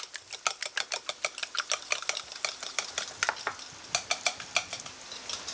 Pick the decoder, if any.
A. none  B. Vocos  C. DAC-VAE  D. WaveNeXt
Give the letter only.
A